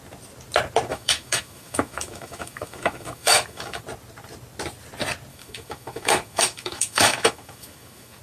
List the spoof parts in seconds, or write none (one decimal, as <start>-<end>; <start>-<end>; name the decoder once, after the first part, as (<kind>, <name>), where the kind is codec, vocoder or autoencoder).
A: 0.9-3.8 (autoencoder, DAC-VAE); 5.3-8.2

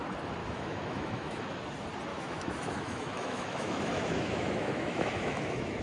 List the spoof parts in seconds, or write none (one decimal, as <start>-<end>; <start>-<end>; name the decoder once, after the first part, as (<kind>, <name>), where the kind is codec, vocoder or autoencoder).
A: 0.4-1.6 (autoencoder, DAC-VAE); 2.1-5.8